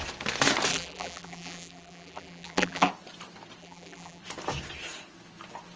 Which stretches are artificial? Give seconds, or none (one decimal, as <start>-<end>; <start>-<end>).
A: 0.7-2.9; 3.6-4.2